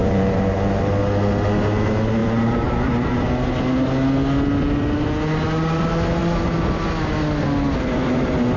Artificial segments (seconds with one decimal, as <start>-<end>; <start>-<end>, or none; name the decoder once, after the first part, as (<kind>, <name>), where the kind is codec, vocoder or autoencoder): 0.0-1.0 (vocoder, BigVGAN v2); 2.2-3.3